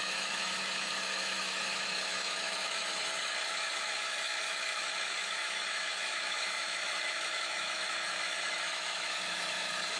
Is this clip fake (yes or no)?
yes